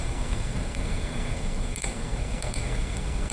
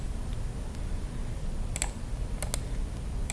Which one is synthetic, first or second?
first